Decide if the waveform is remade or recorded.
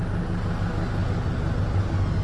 recorded